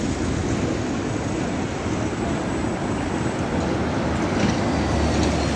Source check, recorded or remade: recorded